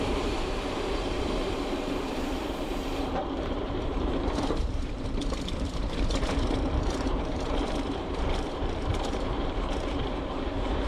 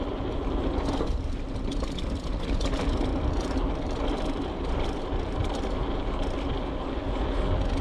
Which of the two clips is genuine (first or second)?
second